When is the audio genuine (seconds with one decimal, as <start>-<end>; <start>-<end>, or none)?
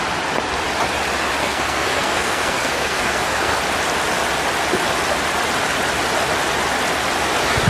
0.0-1.4; 3.6-7.7